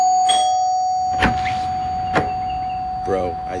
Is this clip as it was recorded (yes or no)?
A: yes